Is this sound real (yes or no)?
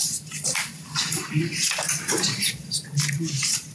no